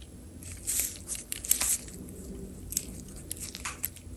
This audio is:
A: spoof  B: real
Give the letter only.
B